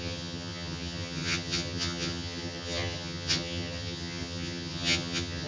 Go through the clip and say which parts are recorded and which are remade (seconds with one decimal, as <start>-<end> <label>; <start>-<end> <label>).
0.0-5.5 remade